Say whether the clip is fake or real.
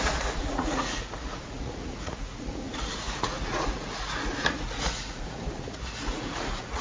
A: fake